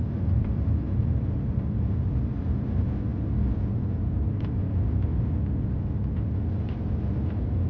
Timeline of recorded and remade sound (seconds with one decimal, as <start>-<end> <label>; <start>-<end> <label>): 0.0-5.1 remade; 5.1-6.4 recorded; 6.4-7.7 remade